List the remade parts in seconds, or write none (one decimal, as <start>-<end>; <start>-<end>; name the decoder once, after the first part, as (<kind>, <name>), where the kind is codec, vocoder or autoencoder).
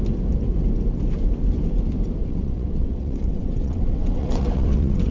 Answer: 2.2-5.1 (vocoder, WaveNeXt)